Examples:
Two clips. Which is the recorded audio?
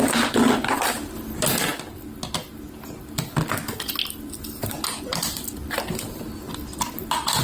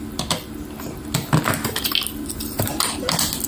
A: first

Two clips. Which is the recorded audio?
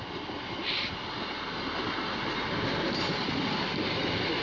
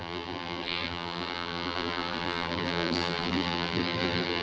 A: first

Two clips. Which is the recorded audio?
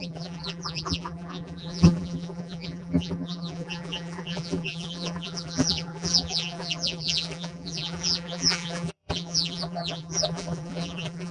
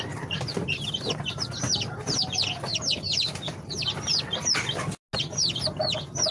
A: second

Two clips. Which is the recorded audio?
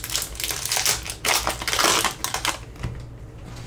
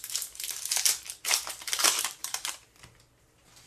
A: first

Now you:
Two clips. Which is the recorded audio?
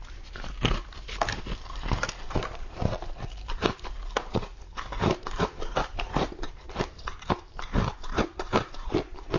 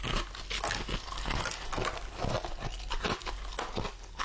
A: second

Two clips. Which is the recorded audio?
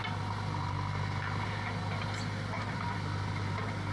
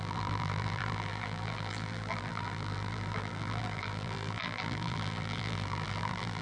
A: first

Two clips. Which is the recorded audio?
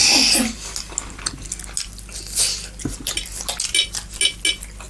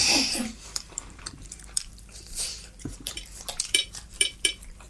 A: first